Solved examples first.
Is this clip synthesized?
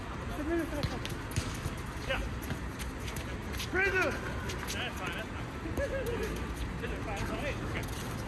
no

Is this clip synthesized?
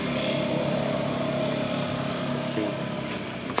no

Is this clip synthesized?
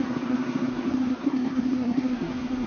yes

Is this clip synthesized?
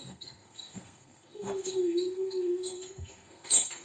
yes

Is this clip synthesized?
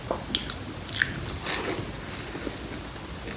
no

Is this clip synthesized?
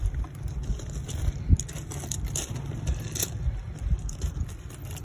no